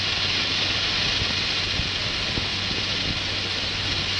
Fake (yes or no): no